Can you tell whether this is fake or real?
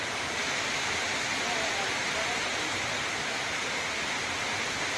real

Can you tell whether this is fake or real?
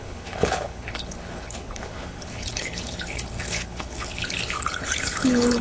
fake